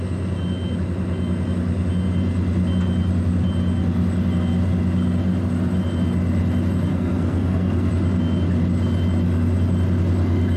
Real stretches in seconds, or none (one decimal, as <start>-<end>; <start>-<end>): 0.0-6.9; 7.9-10.6